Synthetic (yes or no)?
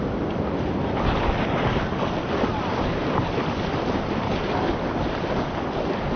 no